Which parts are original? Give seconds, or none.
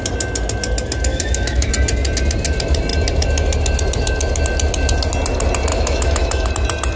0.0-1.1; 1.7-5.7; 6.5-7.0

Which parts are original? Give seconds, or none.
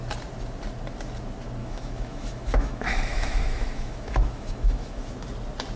0.0-1.6; 5.1-5.8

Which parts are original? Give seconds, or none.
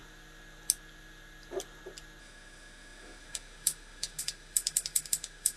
0.0-2.2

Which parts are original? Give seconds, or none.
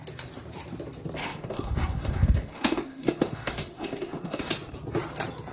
0.0-1.2; 4.5-5.5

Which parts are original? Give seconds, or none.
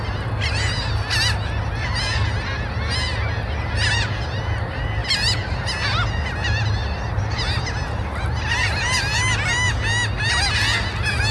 0.0-11.3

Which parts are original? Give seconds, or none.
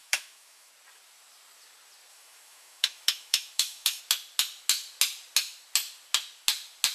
0.7-2.1; 4.0-6.9